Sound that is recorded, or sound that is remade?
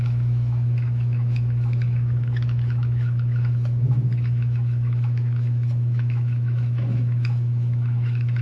remade